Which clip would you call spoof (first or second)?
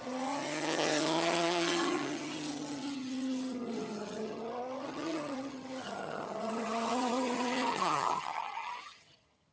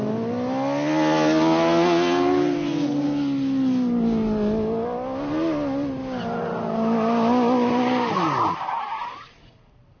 first